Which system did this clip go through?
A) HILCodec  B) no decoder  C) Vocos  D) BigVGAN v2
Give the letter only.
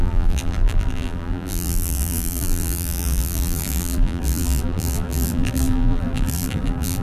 D